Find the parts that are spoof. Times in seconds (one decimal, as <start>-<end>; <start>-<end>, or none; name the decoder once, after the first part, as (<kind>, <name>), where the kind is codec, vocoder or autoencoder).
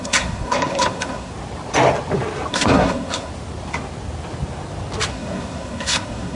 0.0-1.3 (codec, SNAC); 2.5-3.3; 5.1-6.4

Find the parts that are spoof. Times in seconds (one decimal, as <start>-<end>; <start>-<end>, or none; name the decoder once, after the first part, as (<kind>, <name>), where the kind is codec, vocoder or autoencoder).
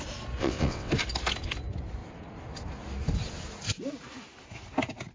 0.4-0.9 (vocoder, WaveNeXt)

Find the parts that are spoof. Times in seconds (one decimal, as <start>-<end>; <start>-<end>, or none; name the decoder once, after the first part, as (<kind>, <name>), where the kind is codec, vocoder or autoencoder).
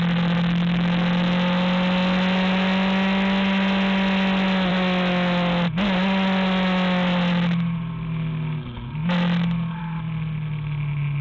none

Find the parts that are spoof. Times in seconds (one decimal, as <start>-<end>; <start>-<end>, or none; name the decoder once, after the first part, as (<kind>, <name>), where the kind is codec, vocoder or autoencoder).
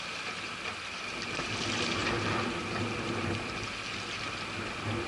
none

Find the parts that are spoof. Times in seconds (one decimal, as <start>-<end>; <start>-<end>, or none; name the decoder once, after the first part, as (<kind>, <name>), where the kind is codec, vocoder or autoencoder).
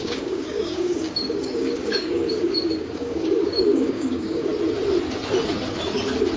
0.0-4.5 (codec, DAC)